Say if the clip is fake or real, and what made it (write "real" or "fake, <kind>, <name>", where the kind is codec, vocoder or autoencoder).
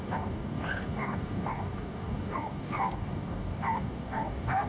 fake, codec, DAC